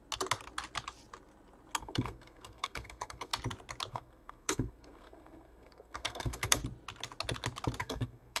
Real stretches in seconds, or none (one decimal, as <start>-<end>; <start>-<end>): 0.0-1.8; 3.3-3.9; 6.6-7.8